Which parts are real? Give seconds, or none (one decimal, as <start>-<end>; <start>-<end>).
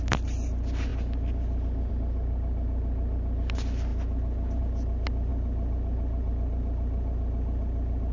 0.0-8.1